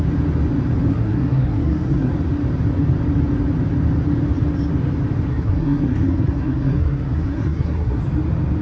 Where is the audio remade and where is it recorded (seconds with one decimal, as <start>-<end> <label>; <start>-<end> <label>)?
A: 0.0-0.9 recorded; 0.9-2.1 remade; 2.1-5.3 recorded; 5.3-8.0 remade; 8.0-8.6 recorded